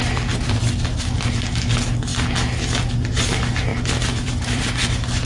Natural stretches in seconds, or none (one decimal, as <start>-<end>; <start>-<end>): 0.0-3.7; 4.7-5.2